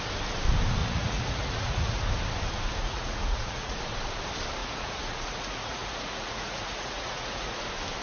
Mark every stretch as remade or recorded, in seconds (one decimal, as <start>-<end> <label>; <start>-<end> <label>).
0.0-0.8 recorded; 0.8-2.0 remade; 2.0-2.8 recorded; 2.8-3.8 remade; 3.8-4.6 recorded; 4.6-7.6 remade; 7.6-8.0 recorded